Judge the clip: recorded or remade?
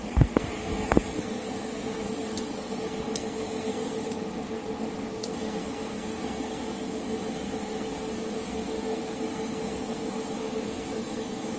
remade